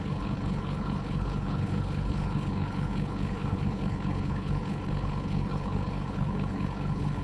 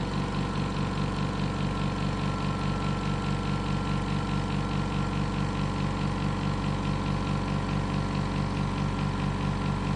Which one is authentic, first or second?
second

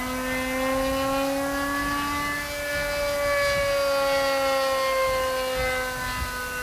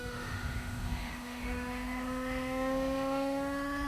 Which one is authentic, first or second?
first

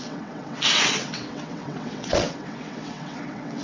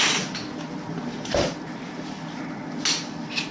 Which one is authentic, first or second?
second